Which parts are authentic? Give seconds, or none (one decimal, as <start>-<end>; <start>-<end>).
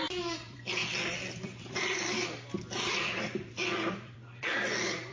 none